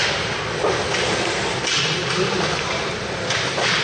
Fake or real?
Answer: real